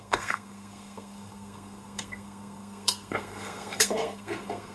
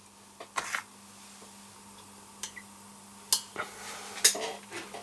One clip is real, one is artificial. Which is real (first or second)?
second